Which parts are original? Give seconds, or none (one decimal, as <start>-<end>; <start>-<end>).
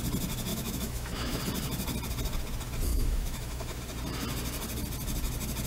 0.0-0.5; 1.4-2.9; 3.8-5.7